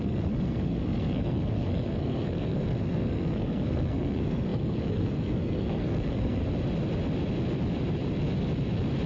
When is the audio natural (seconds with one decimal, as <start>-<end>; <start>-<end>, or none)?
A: 6.4-9.1

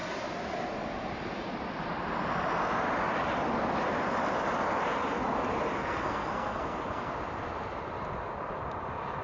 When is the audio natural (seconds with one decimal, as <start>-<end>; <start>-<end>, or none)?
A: 0.0-5.8; 7.1-9.2